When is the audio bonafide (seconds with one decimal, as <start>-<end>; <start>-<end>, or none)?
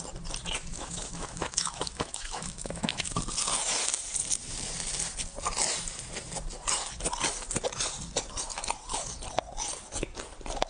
0.0-0.7; 3.2-10.7